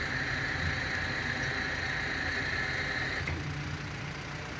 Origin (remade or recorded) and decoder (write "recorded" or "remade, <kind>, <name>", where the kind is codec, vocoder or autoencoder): recorded